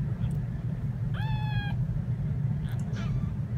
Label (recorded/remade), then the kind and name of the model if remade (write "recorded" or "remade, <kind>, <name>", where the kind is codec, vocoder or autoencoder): recorded